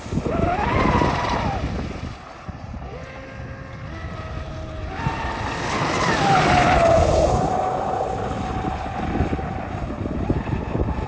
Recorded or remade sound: recorded